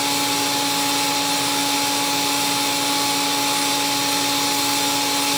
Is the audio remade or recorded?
recorded